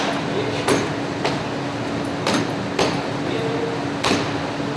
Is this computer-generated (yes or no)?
no